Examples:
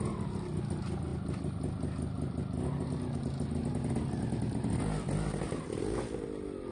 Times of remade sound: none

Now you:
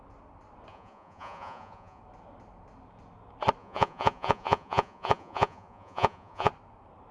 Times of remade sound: 0.7-2.0 (vocoder, Vocos); 3.6-6.5

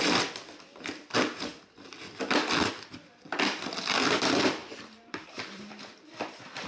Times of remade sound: 4.6-5.7 (vocoder, BigVGAN v2)

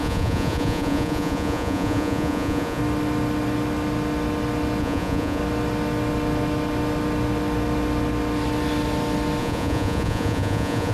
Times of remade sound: 0.0-2.8 (vocoder, Vocos); 4.8-5.4; 9.4-10.9

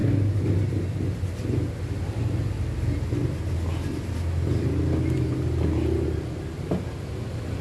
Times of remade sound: none

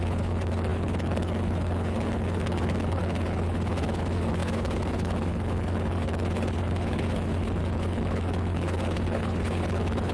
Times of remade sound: 0.0-10.1 (codec, HILCodec)